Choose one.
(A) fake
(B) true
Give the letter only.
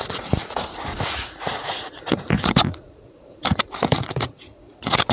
A